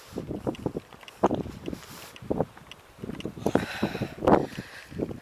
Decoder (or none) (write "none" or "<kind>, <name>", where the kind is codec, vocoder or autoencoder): none